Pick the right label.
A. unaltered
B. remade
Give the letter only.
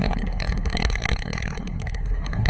B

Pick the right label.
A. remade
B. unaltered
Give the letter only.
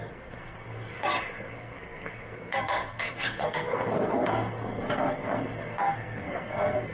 A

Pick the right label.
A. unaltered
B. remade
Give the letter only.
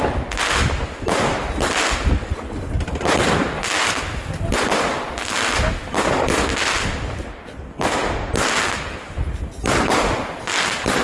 A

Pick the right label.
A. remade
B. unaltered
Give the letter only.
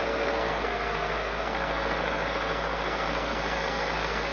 A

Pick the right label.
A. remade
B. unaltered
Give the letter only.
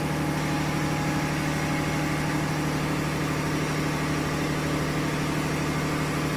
B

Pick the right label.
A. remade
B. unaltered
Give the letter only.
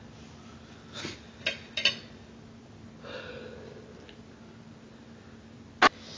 B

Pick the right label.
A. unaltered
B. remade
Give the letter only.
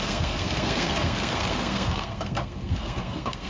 B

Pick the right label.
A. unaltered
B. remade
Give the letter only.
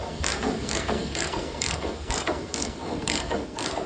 B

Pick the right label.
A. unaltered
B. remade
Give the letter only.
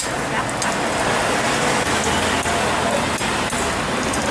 A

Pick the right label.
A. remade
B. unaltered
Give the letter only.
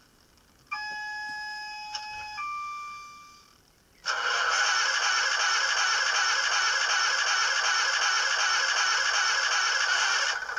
B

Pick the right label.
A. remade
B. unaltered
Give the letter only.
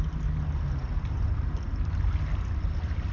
B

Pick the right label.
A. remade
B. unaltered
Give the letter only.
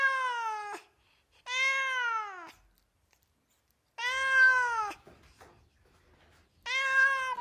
B